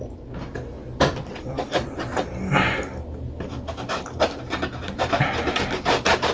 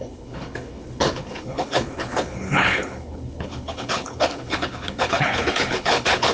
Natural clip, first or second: first